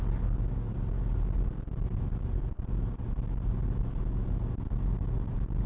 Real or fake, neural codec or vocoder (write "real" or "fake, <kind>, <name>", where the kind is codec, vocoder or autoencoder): real